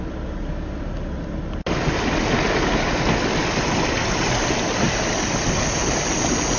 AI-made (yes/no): no